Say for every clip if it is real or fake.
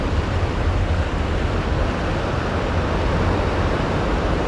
real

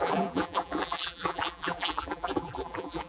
fake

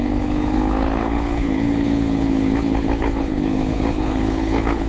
fake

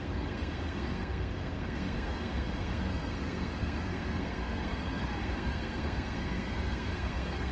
fake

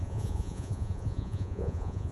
fake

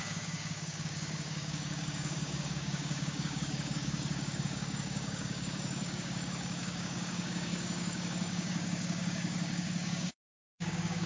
fake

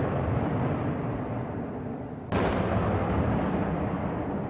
real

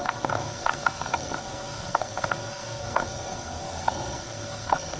fake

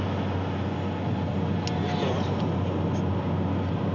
real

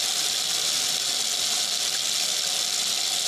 real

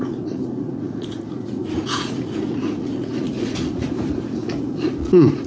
fake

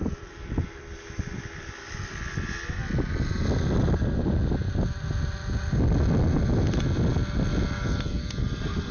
real